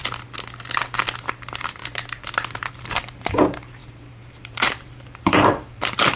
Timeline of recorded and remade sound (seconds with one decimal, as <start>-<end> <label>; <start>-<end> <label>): 0.0-1.3 recorded; 1.3-1.8 remade; 1.8-2.7 recorded; 2.7-6.2 remade